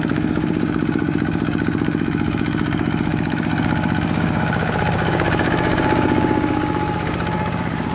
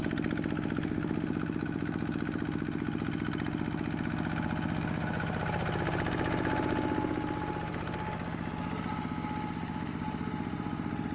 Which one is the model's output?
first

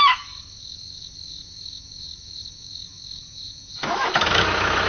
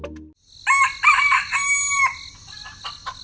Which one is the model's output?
first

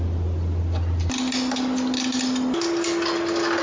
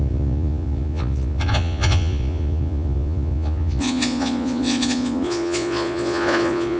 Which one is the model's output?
second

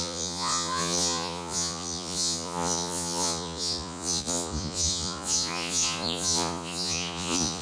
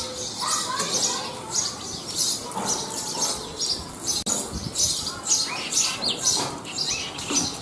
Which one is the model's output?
first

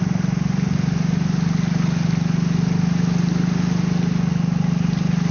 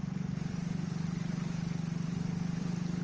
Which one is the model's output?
second